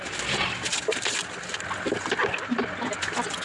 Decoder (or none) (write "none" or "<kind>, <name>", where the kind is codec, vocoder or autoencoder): none